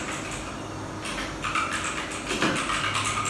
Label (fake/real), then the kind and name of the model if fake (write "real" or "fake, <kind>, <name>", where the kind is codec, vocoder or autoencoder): real